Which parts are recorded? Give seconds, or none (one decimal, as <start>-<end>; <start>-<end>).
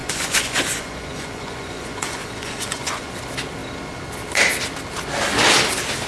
3.1-6.1